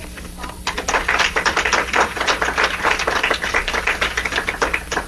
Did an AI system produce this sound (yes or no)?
yes